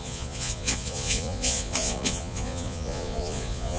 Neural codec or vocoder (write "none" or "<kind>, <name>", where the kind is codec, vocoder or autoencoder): vocoder, Vocos